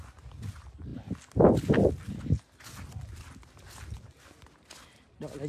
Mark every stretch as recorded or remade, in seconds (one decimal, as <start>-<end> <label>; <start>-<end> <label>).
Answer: 0.0-5.5 recorded

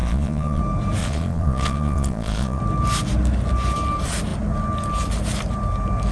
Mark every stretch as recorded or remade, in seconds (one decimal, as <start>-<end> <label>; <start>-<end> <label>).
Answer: 0.0-0.6 remade; 0.6-1.0 recorded; 1.0-2.6 remade; 2.6-6.1 recorded

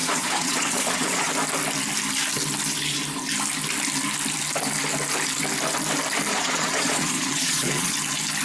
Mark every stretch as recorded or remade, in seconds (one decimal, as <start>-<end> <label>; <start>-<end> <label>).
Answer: 0.0-1.3 remade; 1.3-6.3 recorded; 6.3-7.9 remade; 7.9-8.4 recorded

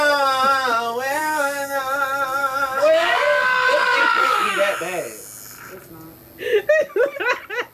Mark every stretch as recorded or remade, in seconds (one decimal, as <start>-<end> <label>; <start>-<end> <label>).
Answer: 0.0-1.2 recorded; 1.2-1.8 remade; 1.8-2.4 recorded; 2.4-4.5 remade; 4.5-7.7 recorded